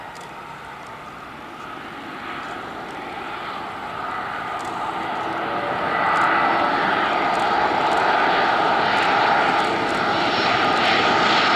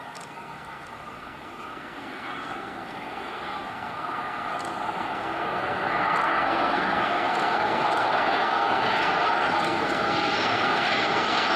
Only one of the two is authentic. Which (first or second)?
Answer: first